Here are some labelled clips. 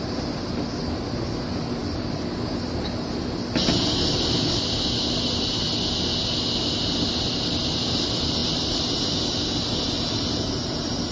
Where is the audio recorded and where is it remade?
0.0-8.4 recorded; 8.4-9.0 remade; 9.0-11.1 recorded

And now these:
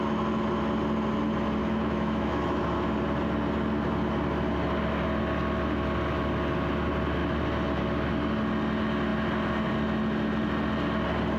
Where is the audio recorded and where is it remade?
0.0-1.6 recorded; 1.6-2.6 remade; 2.6-11.4 recorded

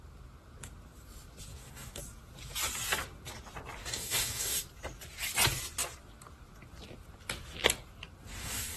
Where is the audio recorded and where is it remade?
0.0-1.5 recorded; 1.5-2.0 remade; 2.0-3.8 recorded; 3.8-4.6 remade; 4.6-8.3 recorded; 8.3-8.8 remade

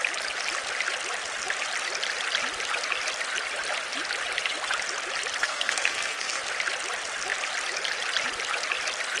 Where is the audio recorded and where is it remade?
0.0-5.4 recorded; 5.4-6.4 remade; 6.4-9.2 recorded

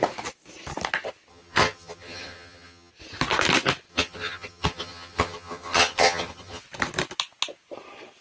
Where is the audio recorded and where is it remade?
0.0-1.3 recorded; 1.3-2.9 remade; 2.9-3.9 recorded; 3.9-6.6 remade; 6.6-8.2 recorded